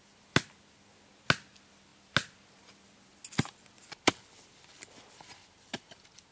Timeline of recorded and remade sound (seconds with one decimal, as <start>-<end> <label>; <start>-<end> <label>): 0.0-6.3 recorded